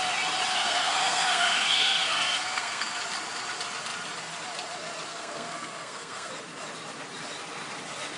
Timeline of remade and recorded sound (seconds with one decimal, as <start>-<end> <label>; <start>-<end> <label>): 0.0-0.5 recorded; 0.5-3.0 remade; 3.0-5.1 recorded; 5.1-6.3 remade; 6.3-8.2 recorded